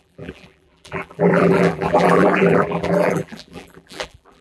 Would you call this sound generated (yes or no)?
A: yes